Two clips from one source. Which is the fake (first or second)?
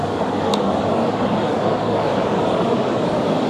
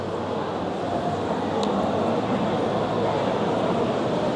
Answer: first